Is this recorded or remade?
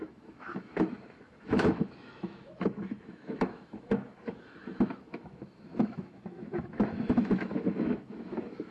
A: remade